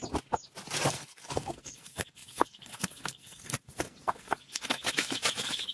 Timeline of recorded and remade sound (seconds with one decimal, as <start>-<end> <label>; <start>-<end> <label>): 0.0-0.9 recorded; 0.9-5.7 remade